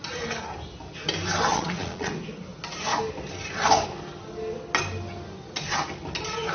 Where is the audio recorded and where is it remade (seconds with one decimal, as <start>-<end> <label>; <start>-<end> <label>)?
0.0-1.5 recorded; 1.5-2.1 remade; 2.1-6.5 recorded

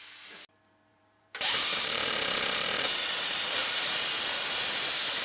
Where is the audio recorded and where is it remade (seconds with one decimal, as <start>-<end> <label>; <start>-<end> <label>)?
0.0-0.9 recorded; 0.9-4.0 remade; 4.0-5.2 recorded

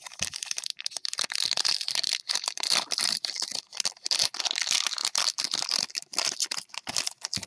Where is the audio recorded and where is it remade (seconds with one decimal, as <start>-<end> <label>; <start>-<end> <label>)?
0.0-0.7 recorded; 0.7-4.1 remade; 4.1-5.0 recorded; 5.0-6.7 remade; 6.7-7.5 recorded

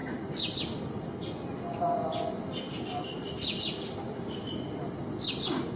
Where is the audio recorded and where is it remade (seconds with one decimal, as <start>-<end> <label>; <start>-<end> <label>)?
0.0-5.8 recorded

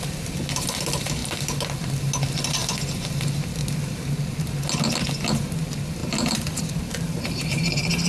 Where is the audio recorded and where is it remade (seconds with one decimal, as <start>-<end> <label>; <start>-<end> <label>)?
0.0-8.1 recorded

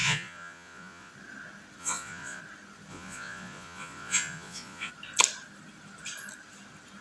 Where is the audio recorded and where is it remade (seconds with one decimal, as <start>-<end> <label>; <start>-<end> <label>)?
0.0-1.1 remade; 1.1-1.8 recorded; 1.8-2.4 remade; 2.4-2.9 recorded; 2.9-4.9 remade; 4.9-7.0 recorded

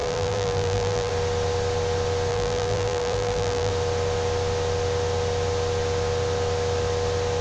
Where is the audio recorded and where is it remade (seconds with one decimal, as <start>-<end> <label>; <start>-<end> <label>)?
0.0-1.1 remade; 1.1-2.3 recorded; 2.3-3.7 remade; 3.7-7.4 recorded

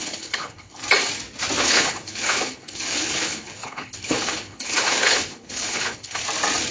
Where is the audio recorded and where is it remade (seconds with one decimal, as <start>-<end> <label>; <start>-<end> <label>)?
0.0-0.8 remade; 0.8-1.6 recorded; 1.6-6.2 remade; 6.2-6.7 recorded